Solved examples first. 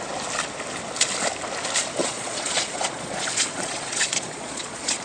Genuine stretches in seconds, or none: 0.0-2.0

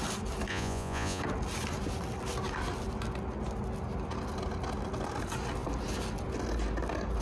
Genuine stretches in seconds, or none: 0.0-0.5; 1.2-7.2